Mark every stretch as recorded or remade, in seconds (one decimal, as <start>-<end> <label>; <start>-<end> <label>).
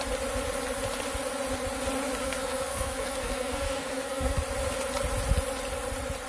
0.0-2.2 recorded; 2.2-4.4 remade; 4.4-6.3 recorded